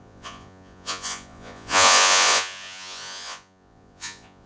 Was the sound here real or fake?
fake